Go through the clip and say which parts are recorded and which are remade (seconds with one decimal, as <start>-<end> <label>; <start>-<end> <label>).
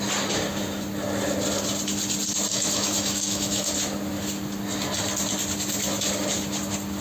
0.0-2.5 recorded; 2.5-3.7 remade; 3.7-7.0 recorded